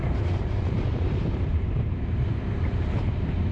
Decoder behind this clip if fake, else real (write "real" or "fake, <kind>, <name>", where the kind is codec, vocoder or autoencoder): fake, vocoder, BigVGAN v2